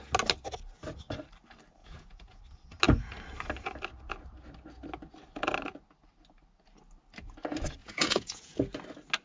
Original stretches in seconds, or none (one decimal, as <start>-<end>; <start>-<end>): 0.0-1.8; 2.4-7.8; 8.6-9.2